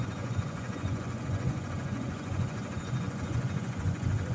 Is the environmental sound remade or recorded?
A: remade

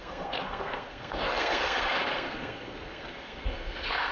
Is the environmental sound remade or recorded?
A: remade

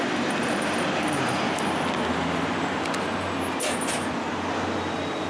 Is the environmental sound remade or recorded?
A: recorded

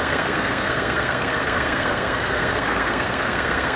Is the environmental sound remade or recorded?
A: remade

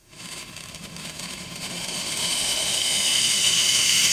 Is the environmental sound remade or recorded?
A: remade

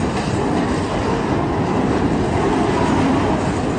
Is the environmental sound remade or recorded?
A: recorded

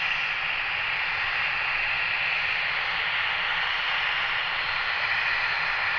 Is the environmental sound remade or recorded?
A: recorded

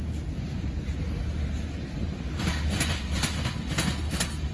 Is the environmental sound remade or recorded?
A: recorded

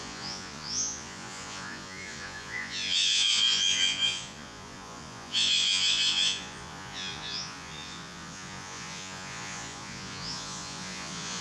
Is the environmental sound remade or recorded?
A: remade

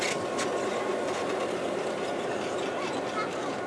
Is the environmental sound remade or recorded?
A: recorded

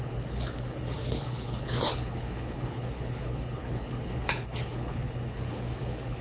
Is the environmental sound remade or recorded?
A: remade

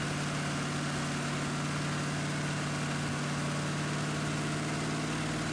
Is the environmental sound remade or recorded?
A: recorded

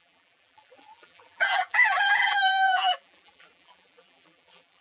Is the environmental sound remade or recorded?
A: remade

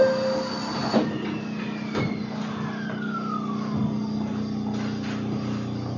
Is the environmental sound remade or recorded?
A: recorded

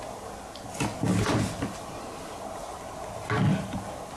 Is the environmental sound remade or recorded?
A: recorded